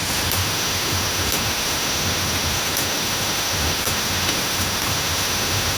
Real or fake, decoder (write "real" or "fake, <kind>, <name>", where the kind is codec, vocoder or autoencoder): fake, autoencoder, DAC-VAE